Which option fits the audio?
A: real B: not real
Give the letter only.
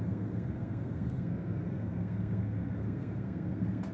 B